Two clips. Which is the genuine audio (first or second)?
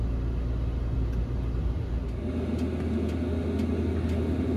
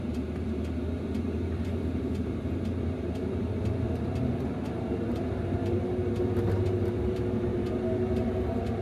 first